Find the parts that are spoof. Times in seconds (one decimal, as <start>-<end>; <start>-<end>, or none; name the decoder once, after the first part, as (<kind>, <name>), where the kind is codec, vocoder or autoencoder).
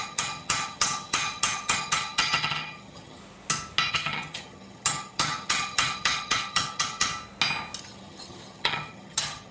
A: 0.0-3.2 (vocoder, HiFi-GAN); 3.9-7.1; 7.8-9.5